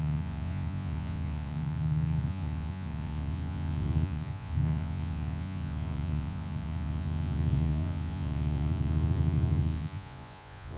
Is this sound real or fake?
fake